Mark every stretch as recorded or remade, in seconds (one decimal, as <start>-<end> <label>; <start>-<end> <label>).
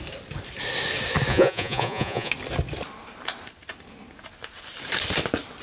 0.0-1.3 recorded; 1.3-2.3 remade; 2.3-5.6 recorded